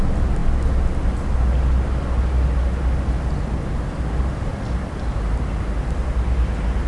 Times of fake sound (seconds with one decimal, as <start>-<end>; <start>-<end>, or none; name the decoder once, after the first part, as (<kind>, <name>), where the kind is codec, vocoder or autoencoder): none